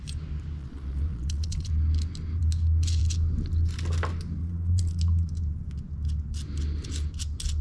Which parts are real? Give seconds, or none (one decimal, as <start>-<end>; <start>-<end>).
0.0-0.6; 1.7-4.4; 5.0-7.6